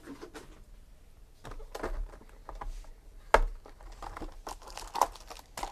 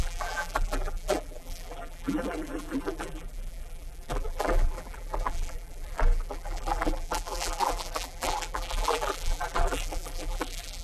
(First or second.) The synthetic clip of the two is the second